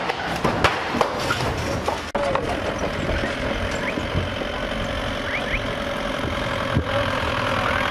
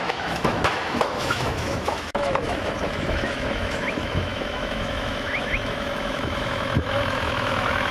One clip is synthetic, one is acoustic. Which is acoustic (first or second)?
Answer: first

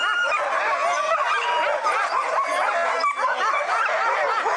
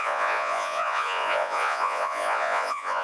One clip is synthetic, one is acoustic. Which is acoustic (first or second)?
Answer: first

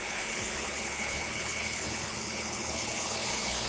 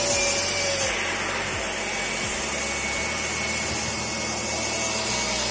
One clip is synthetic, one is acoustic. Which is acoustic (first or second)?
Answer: second